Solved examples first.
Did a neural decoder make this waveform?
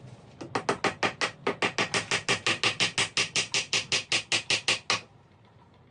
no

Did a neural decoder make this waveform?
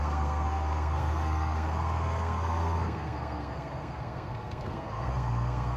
yes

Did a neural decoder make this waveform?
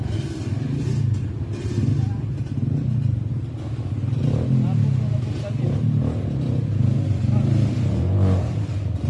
no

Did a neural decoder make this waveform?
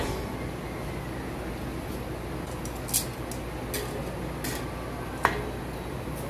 no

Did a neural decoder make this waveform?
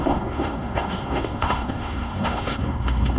yes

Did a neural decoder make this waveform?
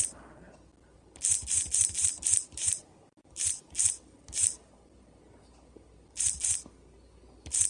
no